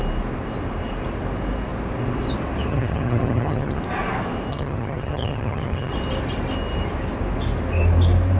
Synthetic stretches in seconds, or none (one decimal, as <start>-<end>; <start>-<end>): 2.7-3.8; 4.5-5.9